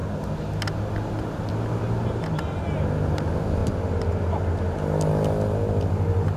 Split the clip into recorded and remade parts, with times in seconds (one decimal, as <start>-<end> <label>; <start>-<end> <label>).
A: 0.0-6.4 recorded